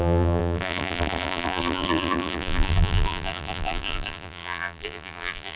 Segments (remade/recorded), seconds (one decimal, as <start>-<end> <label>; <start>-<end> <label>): 0.0-5.6 remade